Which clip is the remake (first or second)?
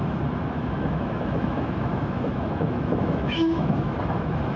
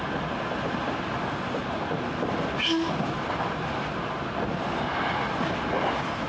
first